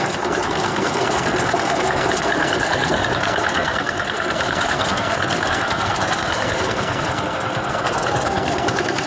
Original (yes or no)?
no